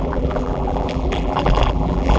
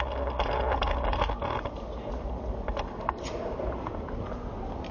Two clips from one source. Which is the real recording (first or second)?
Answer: second